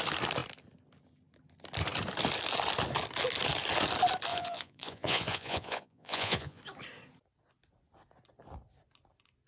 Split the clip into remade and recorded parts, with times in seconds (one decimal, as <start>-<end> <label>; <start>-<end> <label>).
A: 0.0-4.3 recorded; 4.3-6.6 remade; 6.6-9.5 recorded